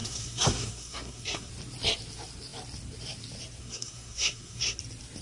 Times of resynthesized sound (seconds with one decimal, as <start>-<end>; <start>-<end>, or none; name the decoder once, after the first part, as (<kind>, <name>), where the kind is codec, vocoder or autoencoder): 0.0-1.5 (codec, SNAC); 3.6-4.8